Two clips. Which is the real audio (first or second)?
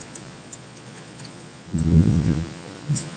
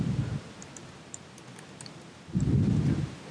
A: second